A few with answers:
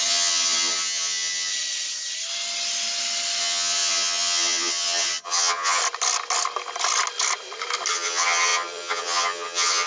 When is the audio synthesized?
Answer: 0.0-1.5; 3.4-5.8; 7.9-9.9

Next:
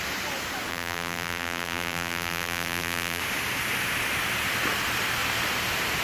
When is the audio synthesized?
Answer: 0.7-3.2

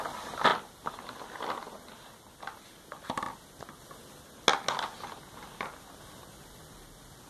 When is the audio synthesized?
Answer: none